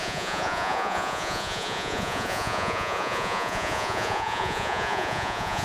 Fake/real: fake